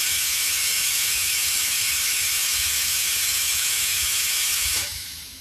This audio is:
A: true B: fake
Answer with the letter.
B